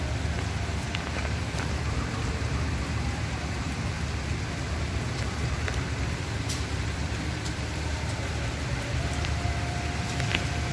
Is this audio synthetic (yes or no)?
yes